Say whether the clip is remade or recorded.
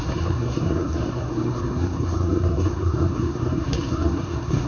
remade